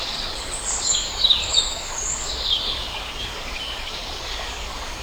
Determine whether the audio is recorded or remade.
remade